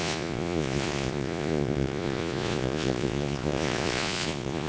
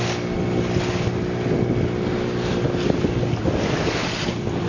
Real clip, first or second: second